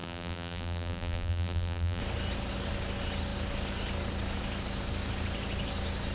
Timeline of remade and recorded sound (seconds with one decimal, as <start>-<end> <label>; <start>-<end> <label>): 0.0-2.0 remade; 2.0-6.1 recorded